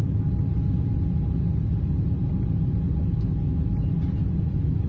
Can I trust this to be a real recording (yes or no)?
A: yes